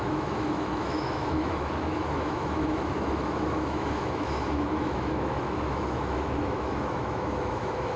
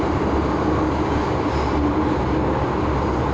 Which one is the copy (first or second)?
first